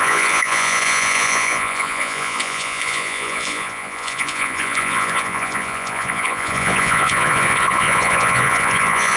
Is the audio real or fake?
fake